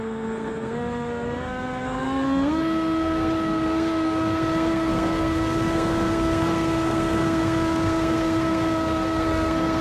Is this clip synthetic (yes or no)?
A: yes